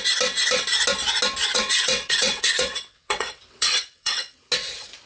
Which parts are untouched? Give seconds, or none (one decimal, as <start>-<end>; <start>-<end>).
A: 0.0-1.4; 4.5-5.1